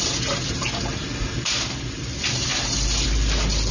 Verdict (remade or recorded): recorded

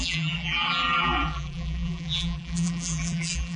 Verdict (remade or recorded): remade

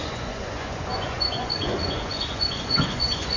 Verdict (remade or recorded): remade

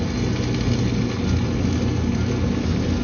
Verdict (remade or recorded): recorded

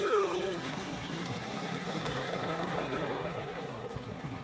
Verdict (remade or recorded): remade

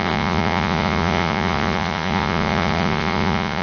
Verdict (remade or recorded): remade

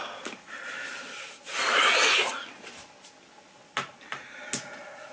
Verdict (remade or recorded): recorded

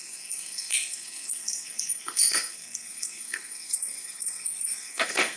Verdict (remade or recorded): remade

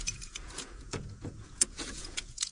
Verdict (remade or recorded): remade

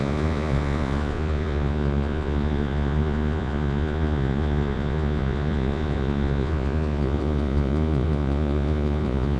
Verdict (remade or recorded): remade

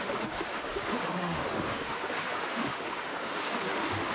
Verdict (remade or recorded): remade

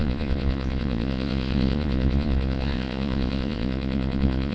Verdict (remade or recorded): remade